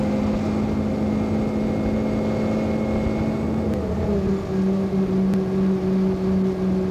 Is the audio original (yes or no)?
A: yes